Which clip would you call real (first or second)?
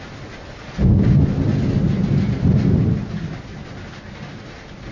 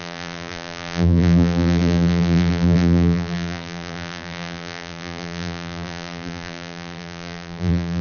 first